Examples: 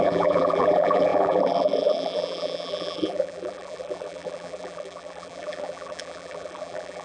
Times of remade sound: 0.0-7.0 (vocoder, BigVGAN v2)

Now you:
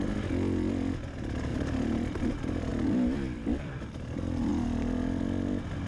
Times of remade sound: 1.5-2.3 (vocoder, BigVGAN v2); 2.7-4.5

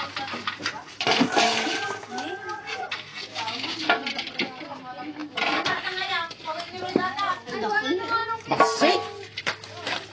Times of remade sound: 3.3-3.8 (codec, DAC)